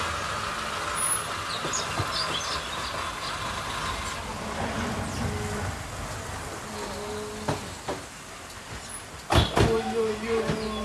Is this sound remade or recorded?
recorded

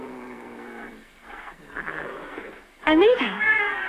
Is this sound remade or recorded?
remade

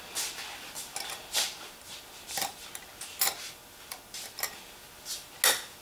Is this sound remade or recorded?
recorded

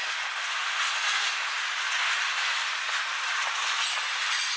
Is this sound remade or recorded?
recorded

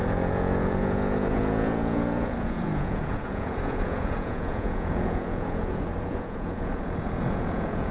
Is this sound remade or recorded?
remade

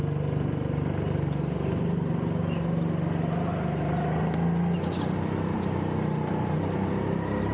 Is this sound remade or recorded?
recorded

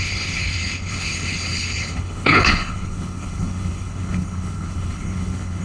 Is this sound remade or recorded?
remade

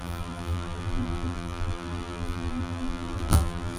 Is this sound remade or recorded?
remade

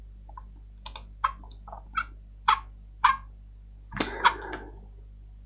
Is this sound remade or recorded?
recorded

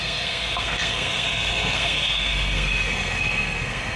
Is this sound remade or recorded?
remade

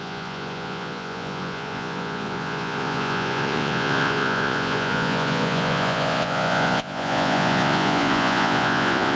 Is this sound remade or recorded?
remade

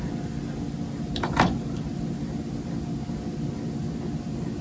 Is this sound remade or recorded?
recorded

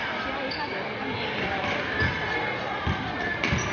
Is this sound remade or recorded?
recorded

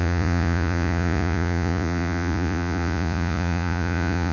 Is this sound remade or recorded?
remade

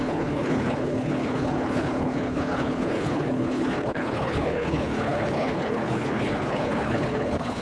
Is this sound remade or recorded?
remade